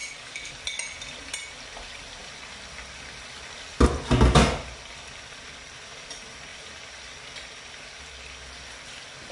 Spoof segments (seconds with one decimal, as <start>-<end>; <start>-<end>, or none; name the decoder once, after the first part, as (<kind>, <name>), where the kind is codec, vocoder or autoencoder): 0.0-0.5 (codec, DAC)